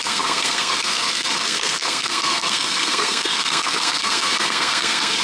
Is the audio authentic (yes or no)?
no